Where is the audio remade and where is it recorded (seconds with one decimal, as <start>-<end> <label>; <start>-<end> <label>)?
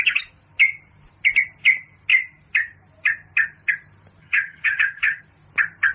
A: 0.0-4.2 recorded; 4.2-5.2 remade; 5.2-5.9 recorded